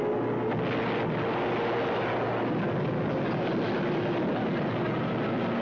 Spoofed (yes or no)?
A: no